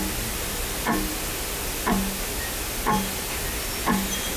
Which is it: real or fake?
real